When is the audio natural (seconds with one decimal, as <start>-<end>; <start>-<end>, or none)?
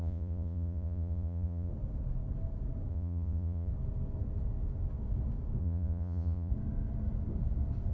1.7-2.9; 3.7-5.6; 6.5-7.9